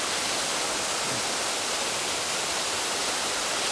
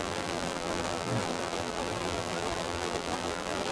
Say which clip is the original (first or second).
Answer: first